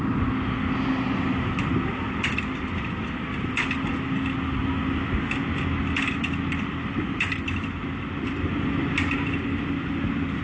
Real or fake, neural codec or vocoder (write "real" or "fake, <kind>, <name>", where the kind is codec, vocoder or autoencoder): real